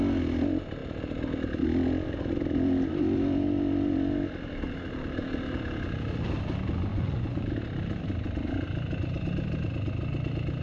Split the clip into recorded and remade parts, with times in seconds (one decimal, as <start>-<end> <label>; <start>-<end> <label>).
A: 0.0-6.9 recorded; 6.9-7.5 remade; 7.5-10.6 recorded